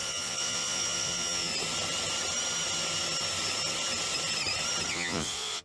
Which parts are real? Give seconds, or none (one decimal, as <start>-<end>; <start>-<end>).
1.5-4.9